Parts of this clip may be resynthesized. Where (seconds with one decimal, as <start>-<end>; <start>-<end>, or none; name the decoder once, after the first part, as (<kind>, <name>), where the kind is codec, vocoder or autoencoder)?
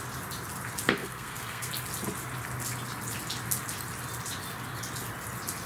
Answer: 1.0-1.7 (codec, SNAC)